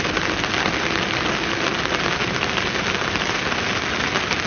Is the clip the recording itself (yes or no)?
yes